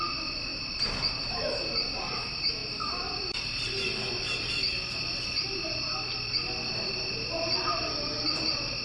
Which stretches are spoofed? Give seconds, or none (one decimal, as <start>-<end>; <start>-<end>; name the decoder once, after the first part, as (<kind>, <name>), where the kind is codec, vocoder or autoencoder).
none